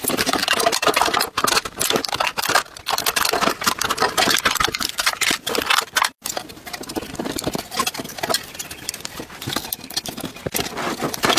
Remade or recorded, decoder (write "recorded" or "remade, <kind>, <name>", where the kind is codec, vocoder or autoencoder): recorded